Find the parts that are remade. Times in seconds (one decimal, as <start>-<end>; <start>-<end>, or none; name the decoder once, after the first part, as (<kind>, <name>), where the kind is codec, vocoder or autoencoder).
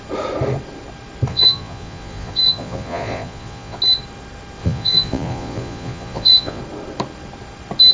1.3-3.8 (vocoder, Vocos); 4.6-6.6